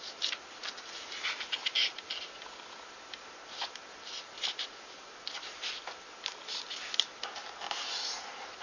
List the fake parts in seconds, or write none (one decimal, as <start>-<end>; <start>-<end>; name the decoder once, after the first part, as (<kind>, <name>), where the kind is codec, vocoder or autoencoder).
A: none